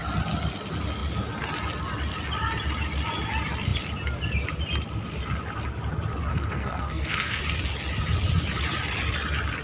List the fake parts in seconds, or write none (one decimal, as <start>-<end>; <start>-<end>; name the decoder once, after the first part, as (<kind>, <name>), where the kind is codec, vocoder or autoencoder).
6.3-7.4 (codec, SNAC)